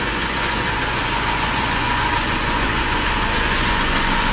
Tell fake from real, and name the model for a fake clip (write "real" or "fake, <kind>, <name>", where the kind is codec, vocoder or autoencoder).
fake, vocoder, Vocos